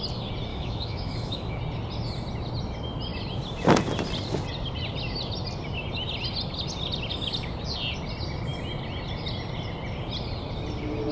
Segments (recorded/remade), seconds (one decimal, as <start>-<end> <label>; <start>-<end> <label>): 0.0-0.5 recorded; 0.5-1.6 remade; 1.6-11.1 recorded